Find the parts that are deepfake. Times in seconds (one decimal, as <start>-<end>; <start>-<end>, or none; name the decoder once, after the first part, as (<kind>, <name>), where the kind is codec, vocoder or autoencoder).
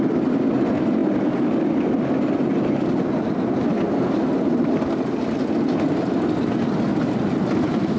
none